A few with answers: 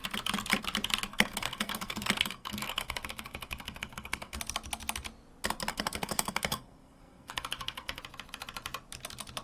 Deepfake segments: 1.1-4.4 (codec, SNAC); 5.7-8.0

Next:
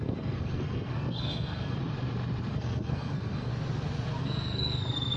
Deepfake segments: 0.0-1.8 (codec, SNAC); 2.5-3.5; 4.2-5.2

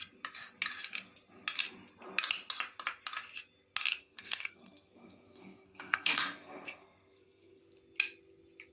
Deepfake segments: 4.0-7.6 (codec, SNAC)

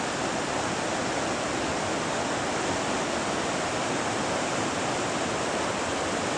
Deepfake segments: none

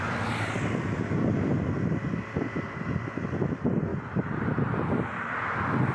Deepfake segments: none